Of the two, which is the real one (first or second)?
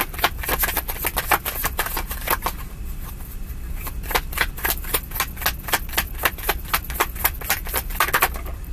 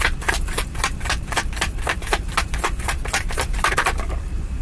first